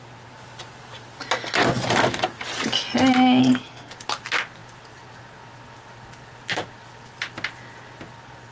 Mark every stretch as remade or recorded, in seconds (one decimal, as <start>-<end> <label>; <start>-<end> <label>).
0.0-3.4 recorded; 3.4-3.9 remade; 3.9-8.5 recorded